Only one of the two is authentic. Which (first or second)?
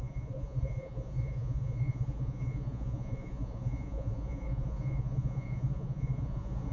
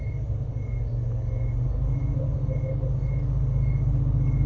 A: second